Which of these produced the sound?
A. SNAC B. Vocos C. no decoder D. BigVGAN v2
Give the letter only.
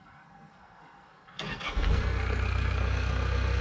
A